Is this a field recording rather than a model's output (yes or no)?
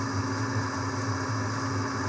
yes